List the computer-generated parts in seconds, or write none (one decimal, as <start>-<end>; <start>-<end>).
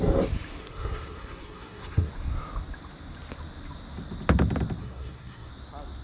0.6-2.1; 4.8-5.5